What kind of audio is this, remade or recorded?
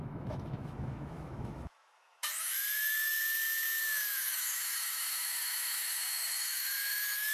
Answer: remade